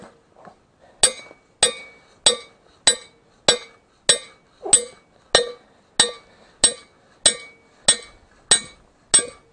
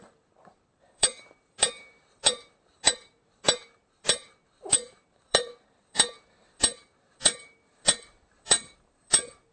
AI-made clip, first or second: second